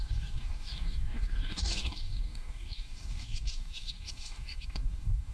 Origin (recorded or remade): remade